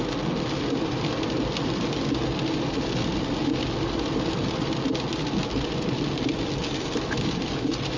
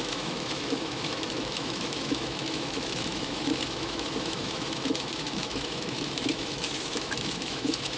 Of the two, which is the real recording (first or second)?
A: first